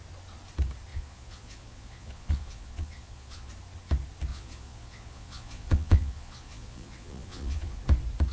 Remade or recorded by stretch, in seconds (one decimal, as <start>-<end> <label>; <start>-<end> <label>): 0.0-0.9 recorded; 0.9-3.5 remade; 3.5-4.3 recorded; 4.3-7.8 remade; 7.8-8.3 recorded